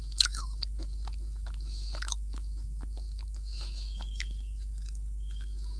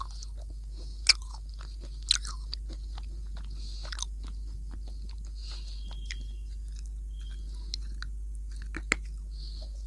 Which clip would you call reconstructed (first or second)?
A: first